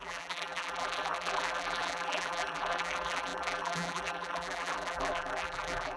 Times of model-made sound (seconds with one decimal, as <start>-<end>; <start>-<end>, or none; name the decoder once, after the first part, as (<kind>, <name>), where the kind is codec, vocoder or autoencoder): 0.0-6.0 (vocoder, BigVGAN v2)

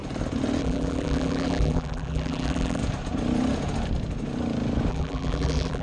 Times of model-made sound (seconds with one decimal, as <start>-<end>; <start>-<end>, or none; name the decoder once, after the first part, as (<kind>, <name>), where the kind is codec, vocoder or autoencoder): 0.6-2.8 (vocoder, BigVGAN v2); 4.9-5.8

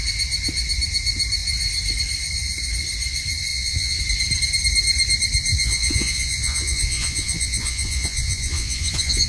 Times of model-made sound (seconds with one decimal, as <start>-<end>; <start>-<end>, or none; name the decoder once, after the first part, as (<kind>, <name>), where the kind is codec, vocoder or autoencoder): 3.5-4.0 (vocoder, Vocos); 5.5-9.3

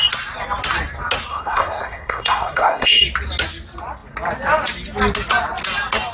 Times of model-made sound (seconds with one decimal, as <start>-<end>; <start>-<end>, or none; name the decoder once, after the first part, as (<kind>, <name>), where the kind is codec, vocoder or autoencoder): 1.3-3.0 (codec, SNAC)